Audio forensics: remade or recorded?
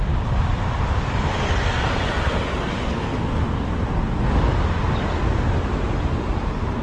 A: recorded